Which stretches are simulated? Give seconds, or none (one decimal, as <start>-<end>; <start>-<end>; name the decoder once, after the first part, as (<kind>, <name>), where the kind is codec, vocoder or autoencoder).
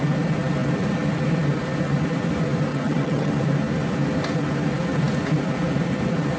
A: 2.7-3.3 (vocoder, HiFi-GAN)